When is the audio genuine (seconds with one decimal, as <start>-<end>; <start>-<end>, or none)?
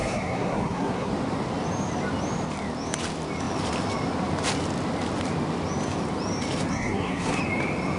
1.1-6.7; 7.4-8.0